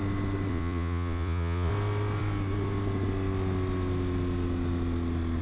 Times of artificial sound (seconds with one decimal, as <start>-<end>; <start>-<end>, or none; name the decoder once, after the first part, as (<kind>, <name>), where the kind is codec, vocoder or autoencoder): 0.5-1.7 (vocoder, Vocos)